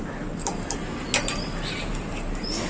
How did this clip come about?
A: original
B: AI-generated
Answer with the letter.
A